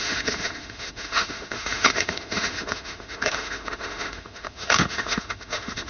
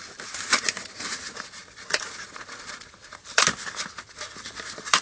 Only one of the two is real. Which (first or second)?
second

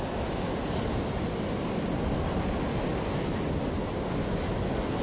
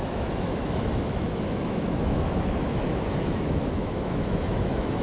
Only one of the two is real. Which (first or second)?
first